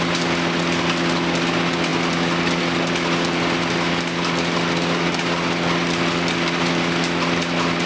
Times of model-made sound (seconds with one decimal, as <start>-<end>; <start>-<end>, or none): none